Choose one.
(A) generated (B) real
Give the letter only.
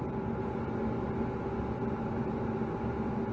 B